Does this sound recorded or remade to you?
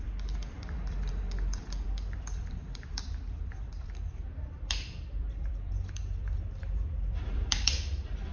remade